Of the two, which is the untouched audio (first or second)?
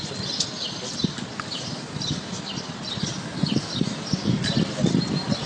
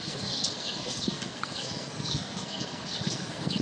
first